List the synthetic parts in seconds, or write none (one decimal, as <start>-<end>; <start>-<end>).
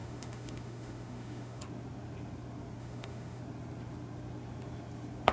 0.0-1.6; 2.8-3.4